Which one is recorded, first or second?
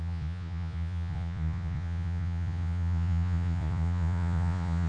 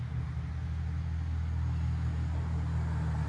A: second